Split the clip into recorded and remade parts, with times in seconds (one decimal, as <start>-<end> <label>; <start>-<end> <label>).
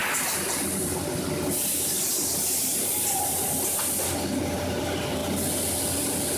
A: 0.0-6.4 recorded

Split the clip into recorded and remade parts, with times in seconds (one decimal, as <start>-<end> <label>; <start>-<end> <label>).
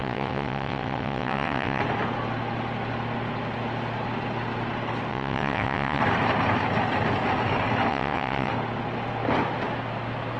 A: 0.0-1.8 remade; 1.8-5.1 recorded; 5.1-6.0 remade; 6.0-7.9 recorded; 7.9-8.5 remade; 8.5-10.4 recorded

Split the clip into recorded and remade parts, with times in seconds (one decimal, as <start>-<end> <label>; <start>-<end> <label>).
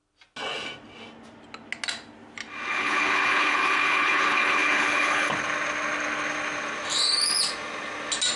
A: 0.0-2.7 recorded; 2.7-5.3 remade; 5.3-8.4 recorded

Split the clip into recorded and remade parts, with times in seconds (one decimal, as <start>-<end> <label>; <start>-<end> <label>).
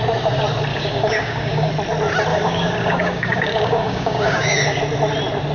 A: 0.0-0.7 recorded; 0.7-1.7 remade; 1.7-2.3 recorded; 2.3-4.8 remade; 4.8-5.5 recorded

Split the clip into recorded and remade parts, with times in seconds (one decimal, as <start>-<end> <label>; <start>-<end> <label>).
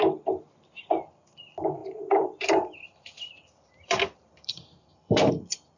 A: 0.0-1.8 recorded; 1.8-5.3 remade; 5.3-5.8 recorded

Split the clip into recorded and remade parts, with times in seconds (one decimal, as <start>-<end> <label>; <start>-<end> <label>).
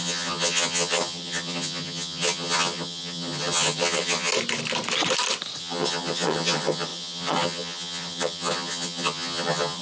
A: 0.0-4.3 remade; 4.3-5.6 recorded; 5.6-9.8 remade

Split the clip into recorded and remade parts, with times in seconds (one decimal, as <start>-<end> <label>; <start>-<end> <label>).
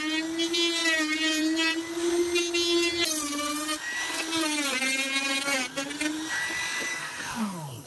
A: 0.0-6.9 recorded; 6.9-7.9 remade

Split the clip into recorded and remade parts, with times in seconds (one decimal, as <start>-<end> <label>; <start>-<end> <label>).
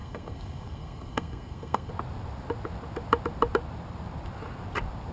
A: 0.0-1.9 remade; 1.9-5.1 recorded